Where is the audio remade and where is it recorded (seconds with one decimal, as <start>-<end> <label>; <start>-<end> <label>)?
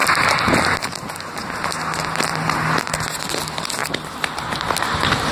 0.0-5.3 recorded